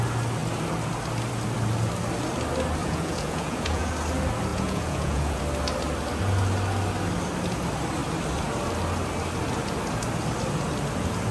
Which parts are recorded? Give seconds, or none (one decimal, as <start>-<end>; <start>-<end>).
0.0-2.8; 3.9-4.5; 5.4-11.3